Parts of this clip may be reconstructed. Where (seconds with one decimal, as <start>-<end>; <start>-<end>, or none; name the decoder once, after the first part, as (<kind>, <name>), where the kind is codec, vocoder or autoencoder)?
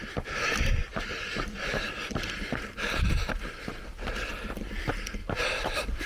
none